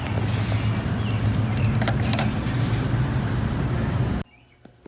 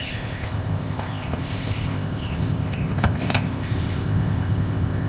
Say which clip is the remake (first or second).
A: second